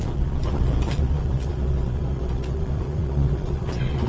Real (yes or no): no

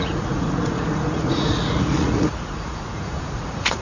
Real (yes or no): no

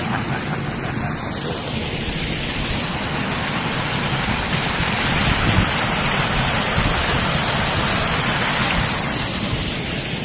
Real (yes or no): yes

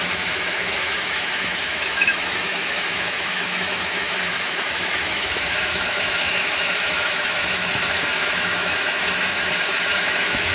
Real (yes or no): no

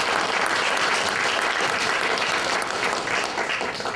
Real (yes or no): yes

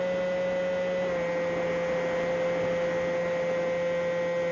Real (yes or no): yes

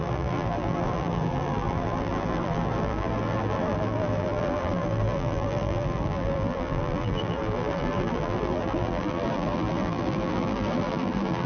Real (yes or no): no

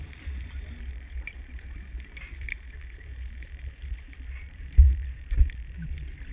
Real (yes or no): no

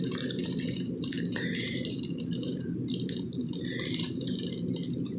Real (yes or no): no